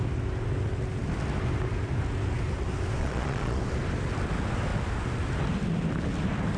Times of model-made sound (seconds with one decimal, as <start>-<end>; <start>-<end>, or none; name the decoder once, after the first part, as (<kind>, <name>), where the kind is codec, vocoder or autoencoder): 3.0-3.6 (vocoder, Vocos)